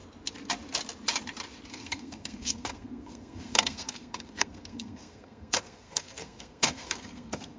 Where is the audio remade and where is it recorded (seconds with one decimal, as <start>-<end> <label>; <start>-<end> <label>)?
0.0-1.7 recorded; 1.7-7.6 remade